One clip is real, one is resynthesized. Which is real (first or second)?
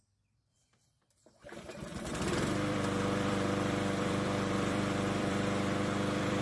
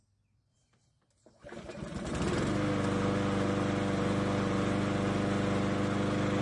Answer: second